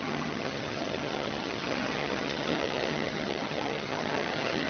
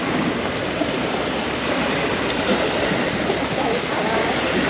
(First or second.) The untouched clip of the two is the second